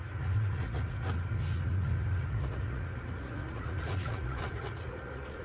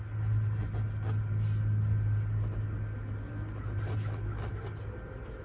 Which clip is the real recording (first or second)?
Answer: second